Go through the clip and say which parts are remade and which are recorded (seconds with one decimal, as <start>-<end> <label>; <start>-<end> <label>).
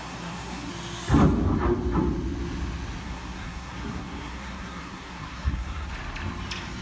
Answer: 0.0-0.7 remade; 0.7-3.0 recorded; 3.0-5.9 remade; 5.9-6.8 recorded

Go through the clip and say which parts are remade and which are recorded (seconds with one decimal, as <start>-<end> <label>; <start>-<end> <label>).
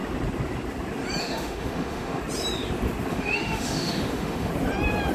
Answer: 0.0-1.2 recorded; 1.2-2.2 remade; 2.2-3.1 recorded; 3.1-4.5 remade; 4.5-5.1 recorded